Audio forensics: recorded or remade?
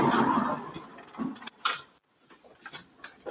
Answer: remade